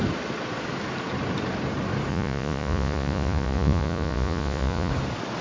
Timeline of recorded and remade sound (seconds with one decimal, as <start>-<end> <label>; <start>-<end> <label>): 0.0-2.1 recorded; 2.1-4.9 remade; 4.9-5.4 recorded